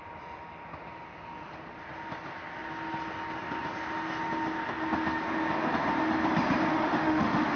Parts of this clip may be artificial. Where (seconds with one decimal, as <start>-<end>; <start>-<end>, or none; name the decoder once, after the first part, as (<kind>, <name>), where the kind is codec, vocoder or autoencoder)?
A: 6.7-7.6 (autoencoder, DAC-VAE)